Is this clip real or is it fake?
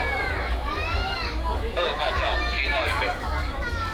fake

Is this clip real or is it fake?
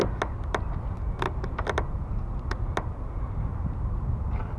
real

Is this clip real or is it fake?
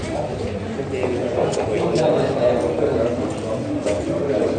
fake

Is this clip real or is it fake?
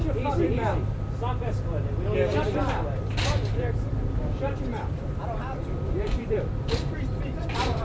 fake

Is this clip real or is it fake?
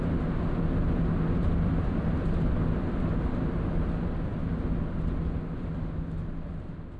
real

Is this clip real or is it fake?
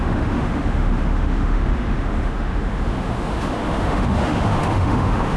fake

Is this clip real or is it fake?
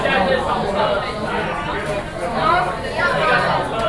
real